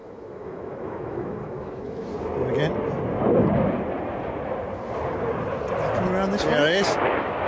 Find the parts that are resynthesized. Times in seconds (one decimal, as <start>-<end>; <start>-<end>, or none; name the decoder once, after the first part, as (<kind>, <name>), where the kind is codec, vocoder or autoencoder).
0.0-2.1 (autoencoder, DAC-VAE)